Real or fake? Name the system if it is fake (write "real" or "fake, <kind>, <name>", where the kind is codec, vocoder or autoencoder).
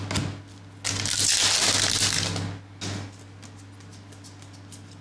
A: real